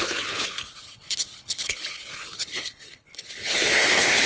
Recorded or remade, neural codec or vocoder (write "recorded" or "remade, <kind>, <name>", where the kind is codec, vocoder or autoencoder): remade, codec, HILCodec